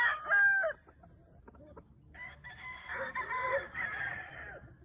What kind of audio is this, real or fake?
real